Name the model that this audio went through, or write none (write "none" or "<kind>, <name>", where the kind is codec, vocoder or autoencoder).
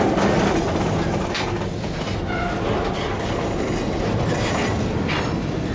none